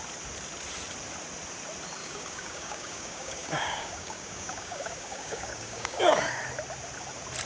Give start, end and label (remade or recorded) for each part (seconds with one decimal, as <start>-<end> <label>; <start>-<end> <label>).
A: 0.0-2.0 recorded; 2.0-6.4 remade; 6.4-7.5 recorded